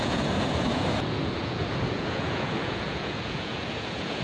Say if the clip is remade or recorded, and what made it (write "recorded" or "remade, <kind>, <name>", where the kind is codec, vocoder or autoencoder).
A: remade, vocoder, Vocos